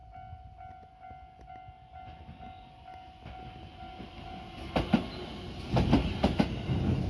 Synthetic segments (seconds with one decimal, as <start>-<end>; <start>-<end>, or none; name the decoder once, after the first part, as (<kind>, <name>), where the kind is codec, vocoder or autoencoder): none